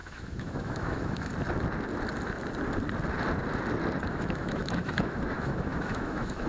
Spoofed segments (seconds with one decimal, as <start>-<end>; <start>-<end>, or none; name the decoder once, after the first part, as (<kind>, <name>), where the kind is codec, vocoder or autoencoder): 0.0-1.3 (autoencoder, DAC-VAE); 4.1-6.5